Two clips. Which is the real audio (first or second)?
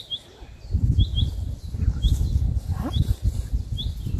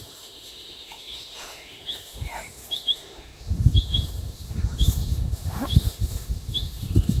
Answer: first